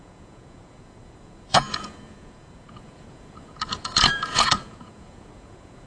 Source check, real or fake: fake